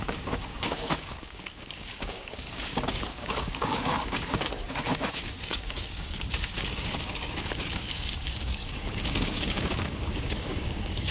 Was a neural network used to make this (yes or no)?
yes